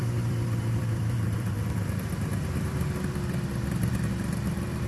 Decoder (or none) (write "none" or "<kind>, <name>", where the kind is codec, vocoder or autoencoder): vocoder, BigVGAN v2